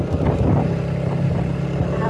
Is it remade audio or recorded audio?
recorded